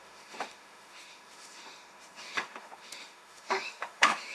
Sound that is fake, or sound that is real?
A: fake